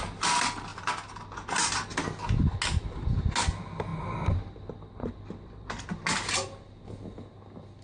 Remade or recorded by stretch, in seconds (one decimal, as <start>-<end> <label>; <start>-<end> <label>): 0.0-7.8 recorded